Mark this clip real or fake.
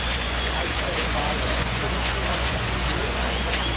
fake